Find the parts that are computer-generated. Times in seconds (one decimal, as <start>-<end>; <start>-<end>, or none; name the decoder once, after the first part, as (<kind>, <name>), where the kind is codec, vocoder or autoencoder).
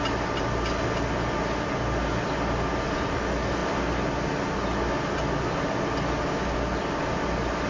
none